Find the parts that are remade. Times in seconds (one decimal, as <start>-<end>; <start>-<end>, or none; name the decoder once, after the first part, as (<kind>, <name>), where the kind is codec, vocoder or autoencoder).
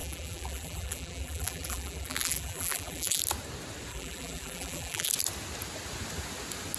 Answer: 0.0-3.2 (vocoder, BigVGAN v2); 3.9-5.1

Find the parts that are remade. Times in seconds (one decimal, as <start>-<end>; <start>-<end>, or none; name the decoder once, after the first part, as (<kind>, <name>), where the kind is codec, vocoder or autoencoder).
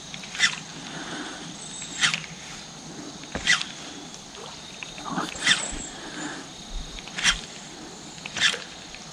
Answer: 0.7-1.9 (vocoder, BigVGAN v2); 4.1-4.7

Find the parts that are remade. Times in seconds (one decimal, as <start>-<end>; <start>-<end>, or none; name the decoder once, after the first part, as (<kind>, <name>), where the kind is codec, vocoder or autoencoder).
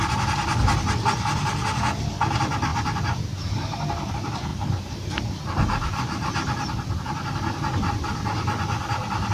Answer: 2.7-4.1 (vocoder, BigVGAN v2); 4.5-5.2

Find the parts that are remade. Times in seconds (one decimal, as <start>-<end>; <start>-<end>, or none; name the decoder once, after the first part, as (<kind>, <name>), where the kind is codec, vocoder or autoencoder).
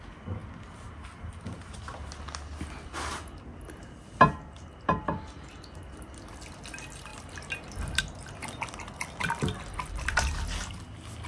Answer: none